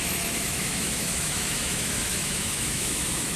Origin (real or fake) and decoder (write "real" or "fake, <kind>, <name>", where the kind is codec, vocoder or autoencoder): fake, autoencoder, DAC-VAE